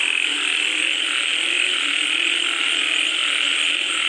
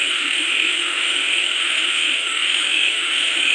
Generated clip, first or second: second